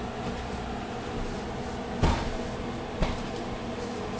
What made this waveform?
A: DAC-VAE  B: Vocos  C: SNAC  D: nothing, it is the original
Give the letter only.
D